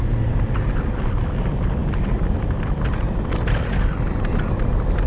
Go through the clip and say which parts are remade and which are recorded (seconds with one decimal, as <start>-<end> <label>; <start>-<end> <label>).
0.0-5.1 recorded